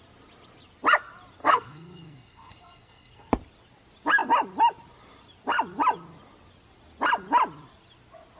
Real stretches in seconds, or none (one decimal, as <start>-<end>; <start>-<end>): 0.0-1.4; 3.3-8.4